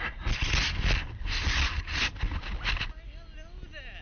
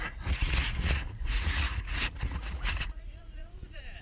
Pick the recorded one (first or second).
first